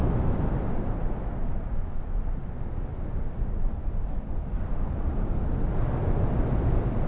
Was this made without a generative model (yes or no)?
yes